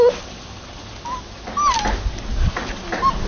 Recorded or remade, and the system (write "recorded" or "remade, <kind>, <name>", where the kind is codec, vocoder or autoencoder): recorded